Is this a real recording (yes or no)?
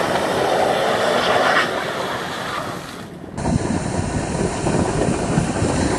yes